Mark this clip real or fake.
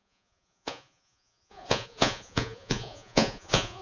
fake